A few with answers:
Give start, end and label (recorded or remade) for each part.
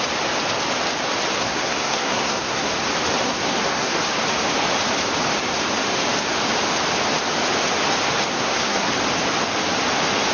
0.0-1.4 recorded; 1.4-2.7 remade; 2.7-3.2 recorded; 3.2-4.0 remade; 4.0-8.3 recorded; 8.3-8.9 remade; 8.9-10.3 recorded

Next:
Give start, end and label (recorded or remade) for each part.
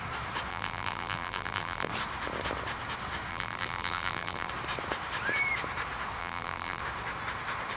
0.0-0.5 recorded; 0.5-1.9 remade; 1.9-3.3 recorded; 3.3-4.5 remade; 4.5-6.2 recorded; 6.2-6.8 remade; 6.8-7.8 recorded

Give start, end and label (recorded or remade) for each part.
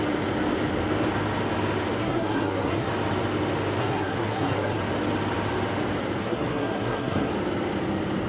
0.0-2.0 recorded; 2.0-2.9 remade; 2.9-3.8 recorded; 3.8-4.8 remade; 4.8-6.2 recorded; 6.2-7.3 remade; 7.3-8.3 recorded